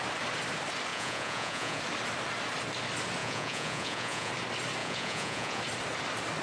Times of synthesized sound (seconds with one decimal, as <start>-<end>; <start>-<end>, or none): 0.9-1.8; 3.2-4.3; 4.8-5.6